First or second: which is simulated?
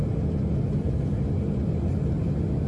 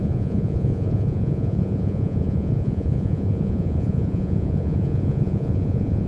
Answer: second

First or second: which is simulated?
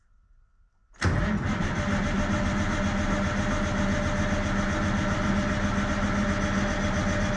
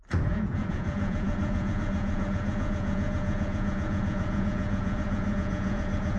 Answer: second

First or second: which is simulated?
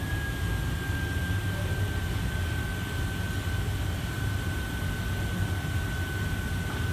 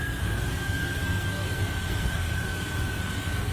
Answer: second